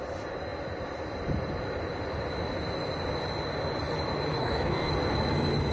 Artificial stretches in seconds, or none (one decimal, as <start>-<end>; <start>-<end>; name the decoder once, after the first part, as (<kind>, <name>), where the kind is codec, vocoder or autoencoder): 4.4-4.9 (codec, DAC)